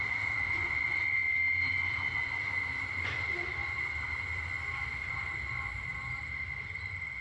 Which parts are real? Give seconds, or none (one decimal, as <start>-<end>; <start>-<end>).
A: 0.0-7.2